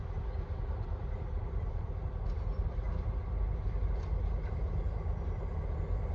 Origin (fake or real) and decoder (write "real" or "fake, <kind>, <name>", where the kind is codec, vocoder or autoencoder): real